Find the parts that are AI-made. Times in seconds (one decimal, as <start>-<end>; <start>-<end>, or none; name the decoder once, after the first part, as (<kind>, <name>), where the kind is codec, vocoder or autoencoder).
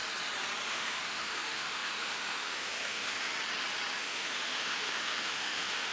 0.7-3.3 (autoencoder, DAC-VAE); 3.9-5.9